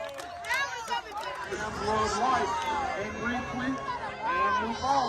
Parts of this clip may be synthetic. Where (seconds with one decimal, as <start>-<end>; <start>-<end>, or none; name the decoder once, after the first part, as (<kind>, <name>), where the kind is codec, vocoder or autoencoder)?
none